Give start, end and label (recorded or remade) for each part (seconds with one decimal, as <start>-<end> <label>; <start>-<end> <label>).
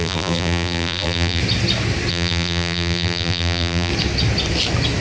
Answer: 0.0-1.4 remade; 1.4-2.1 recorded; 2.1-3.9 remade; 3.9-5.0 recorded